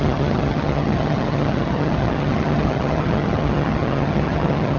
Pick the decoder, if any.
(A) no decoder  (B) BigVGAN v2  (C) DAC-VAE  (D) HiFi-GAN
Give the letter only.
D